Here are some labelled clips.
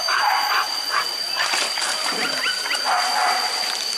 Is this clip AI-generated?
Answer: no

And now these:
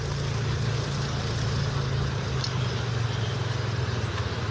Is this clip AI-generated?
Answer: no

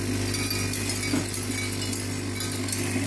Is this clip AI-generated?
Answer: no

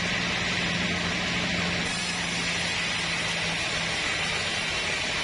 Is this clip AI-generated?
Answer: no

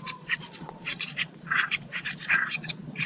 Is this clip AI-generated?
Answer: yes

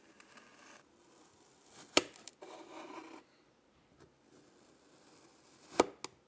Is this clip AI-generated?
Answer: no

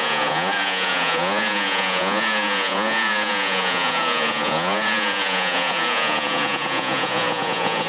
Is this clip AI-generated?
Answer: yes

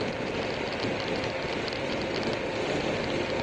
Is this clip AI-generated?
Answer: no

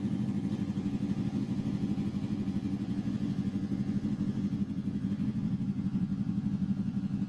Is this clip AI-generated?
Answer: yes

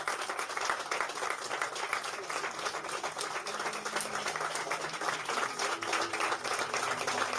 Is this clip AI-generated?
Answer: no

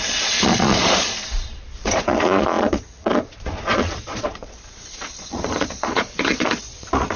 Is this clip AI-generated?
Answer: yes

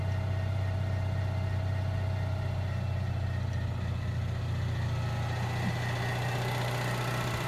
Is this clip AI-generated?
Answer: no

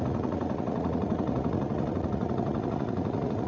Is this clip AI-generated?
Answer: yes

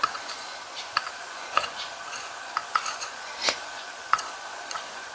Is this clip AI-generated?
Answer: yes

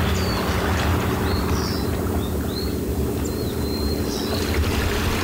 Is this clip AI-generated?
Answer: no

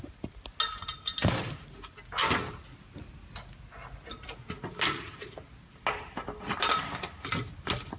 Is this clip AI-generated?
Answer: no